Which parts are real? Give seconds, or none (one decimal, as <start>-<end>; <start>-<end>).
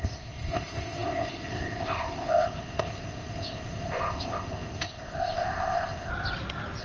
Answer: 6.1-6.8